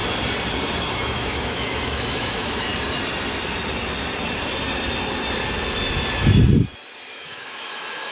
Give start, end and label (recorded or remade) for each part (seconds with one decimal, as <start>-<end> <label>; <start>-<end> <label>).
0.0-0.9 recorded; 0.9-2.7 remade; 2.7-7.1 recorded; 7.1-8.1 remade